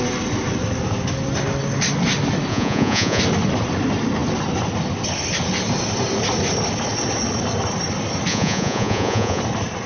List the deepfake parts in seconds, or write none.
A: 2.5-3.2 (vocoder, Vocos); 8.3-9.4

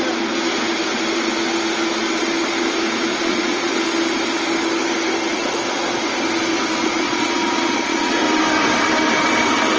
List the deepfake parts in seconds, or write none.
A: 3.1-3.7 (vocoder, Vocos); 5.4-6.0; 6.8-8.2

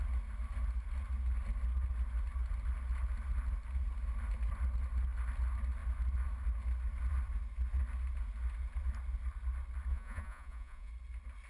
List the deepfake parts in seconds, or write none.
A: 9.9-10.9 (vocoder, Vocos)

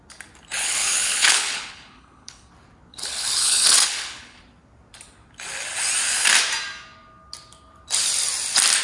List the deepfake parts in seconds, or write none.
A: 0.6-2.5 (codec, HILCodec); 2.9-4.4

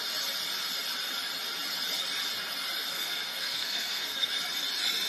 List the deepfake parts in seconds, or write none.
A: 2.9-4.3 (codec, SNAC)

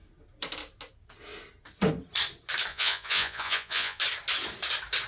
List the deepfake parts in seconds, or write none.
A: 2.7-4.0 (vocoder, Vocos)

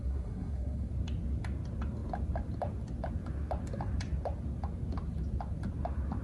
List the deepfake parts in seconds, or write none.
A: 0.0-0.9 (codec, SNAC)

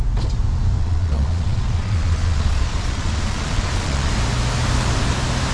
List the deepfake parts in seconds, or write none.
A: 0.8-4.1 (vocoder, Vocos)